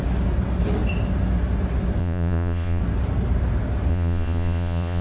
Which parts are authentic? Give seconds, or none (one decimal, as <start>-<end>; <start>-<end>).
0.0-2.0; 2.8-3.9